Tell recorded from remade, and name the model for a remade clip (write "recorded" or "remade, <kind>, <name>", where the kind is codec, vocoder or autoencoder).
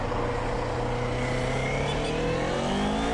recorded